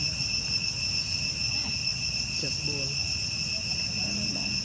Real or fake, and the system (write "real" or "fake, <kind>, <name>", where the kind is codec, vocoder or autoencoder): fake, vocoder, BigVGAN v2